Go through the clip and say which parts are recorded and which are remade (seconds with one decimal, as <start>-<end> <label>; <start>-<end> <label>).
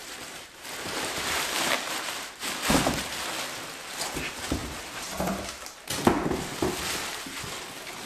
0.0-3.2 remade; 3.2-4.6 recorded; 4.6-5.3 remade; 5.3-8.1 recorded